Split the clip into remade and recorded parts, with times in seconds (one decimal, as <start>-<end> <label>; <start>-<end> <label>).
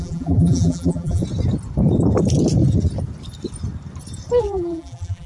0.0-1.2 remade; 1.2-4.4 recorded; 4.4-5.3 remade